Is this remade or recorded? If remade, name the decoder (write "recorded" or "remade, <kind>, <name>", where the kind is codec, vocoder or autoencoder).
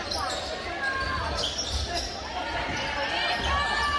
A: recorded